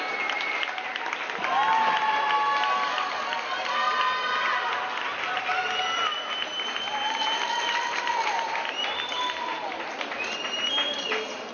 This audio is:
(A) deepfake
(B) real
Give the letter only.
B